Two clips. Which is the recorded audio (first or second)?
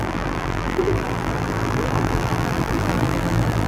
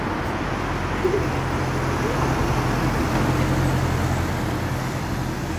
second